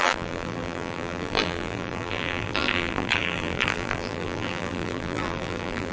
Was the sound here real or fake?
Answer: fake